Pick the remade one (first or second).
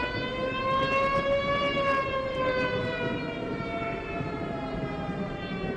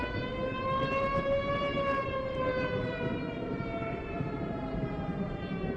second